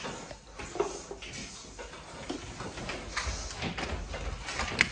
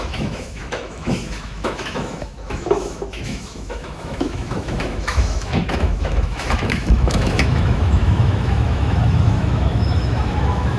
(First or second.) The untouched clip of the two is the first